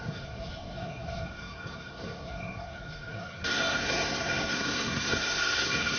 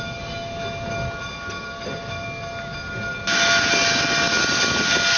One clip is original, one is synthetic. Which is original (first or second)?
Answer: second